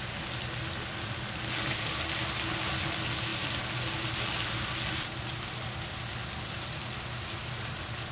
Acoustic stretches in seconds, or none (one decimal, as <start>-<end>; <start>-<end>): 0.0-8.1